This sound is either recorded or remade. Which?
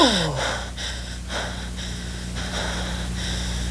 recorded